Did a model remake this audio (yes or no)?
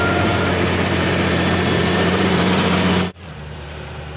yes